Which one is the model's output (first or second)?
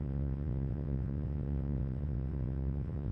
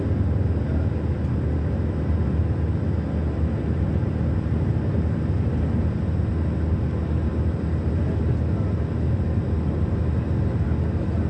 first